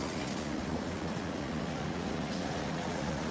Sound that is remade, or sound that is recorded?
remade